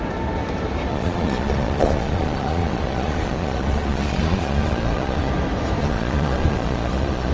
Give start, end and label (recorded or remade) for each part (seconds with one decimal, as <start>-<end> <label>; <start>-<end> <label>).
0.0-0.9 recorded; 0.9-5.3 remade; 5.3-5.8 recorded; 5.8-7.3 remade